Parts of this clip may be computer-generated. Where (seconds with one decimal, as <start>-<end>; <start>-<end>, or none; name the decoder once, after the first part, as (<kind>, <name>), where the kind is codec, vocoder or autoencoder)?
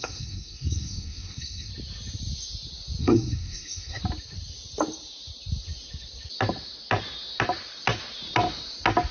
0.0-1.7 (codec, SNAC); 3.0-4.0